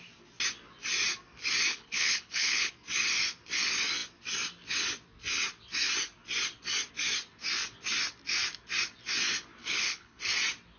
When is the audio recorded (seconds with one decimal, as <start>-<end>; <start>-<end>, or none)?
0.0-1.7; 2.7-9.6; 10.2-10.8